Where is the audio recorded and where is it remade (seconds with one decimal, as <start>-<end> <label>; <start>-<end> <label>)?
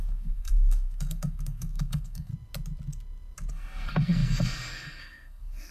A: 0.0-2.3 remade; 2.3-3.5 recorded; 3.5-5.7 remade